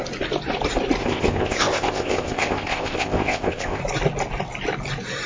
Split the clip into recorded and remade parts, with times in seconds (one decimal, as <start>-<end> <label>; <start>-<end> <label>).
0.0-1.0 recorded; 1.0-3.8 remade; 3.8-5.3 recorded